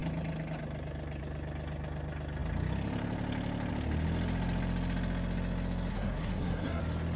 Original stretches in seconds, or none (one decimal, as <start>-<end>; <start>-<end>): 0.0-5.9; 6.8-7.2